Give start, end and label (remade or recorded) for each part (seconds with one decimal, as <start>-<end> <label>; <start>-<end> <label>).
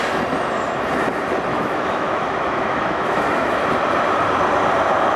0.0-1.5 recorded; 1.5-3.6 remade; 3.6-5.2 recorded